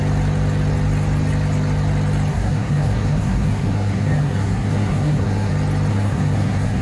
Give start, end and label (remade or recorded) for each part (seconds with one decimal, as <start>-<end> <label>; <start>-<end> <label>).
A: 0.0-2.3 recorded; 2.3-5.5 remade; 5.5-5.9 recorded; 5.9-6.8 remade